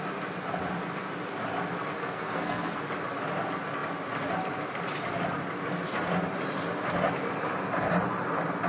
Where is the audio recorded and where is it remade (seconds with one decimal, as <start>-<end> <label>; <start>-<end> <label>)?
0.0-2.0 recorded; 2.0-2.8 remade; 2.8-8.7 recorded